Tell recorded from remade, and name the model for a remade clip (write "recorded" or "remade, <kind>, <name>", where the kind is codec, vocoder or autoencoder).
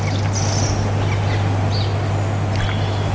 recorded